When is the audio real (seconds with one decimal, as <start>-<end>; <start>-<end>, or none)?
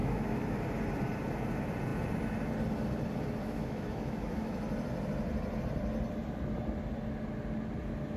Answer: 0.6-3.4; 4.6-8.2